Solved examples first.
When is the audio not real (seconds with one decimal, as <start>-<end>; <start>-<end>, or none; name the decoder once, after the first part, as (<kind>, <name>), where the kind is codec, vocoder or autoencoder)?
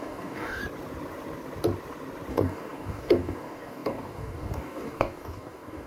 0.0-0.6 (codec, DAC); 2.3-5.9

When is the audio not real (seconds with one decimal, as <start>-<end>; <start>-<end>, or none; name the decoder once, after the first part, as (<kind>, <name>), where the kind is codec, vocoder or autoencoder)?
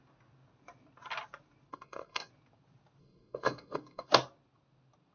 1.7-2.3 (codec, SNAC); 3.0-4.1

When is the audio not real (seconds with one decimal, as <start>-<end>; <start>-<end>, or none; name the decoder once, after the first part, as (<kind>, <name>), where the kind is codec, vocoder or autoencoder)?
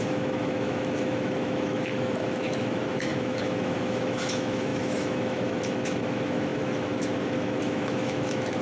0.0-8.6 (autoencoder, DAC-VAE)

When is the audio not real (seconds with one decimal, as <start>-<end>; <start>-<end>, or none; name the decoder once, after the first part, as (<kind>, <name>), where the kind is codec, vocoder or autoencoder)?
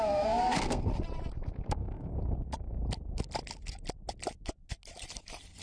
0.0-0.9 (codec, SNAC); 1.7-2.1